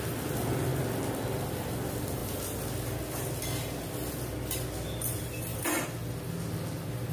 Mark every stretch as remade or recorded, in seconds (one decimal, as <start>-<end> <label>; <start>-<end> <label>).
0.0-7.1 recorded